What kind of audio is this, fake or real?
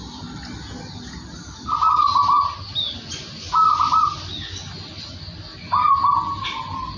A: real